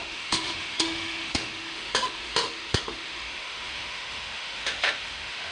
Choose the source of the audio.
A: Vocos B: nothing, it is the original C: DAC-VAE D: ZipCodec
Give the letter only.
C